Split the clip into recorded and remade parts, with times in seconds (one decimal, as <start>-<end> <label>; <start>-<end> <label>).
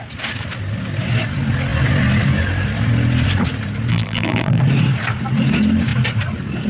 0.0-3.9 recorded; 3.9-4.6 remade; 4.6-6.7 recorded